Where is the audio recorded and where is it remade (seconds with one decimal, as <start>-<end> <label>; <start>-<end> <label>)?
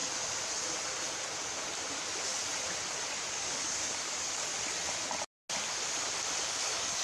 0.0-3.3 recorded; 3.3-4.5 remade; 4.5-6.4 recorded; 6.4-7.0 remade